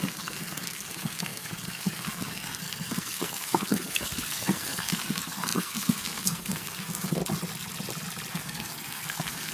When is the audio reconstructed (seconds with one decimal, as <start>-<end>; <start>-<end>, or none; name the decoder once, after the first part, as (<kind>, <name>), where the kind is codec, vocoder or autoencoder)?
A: 0.0-7.2 (codec, SNAC); 8.3-9.5